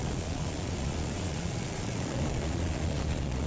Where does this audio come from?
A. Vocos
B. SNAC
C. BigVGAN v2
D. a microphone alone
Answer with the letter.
A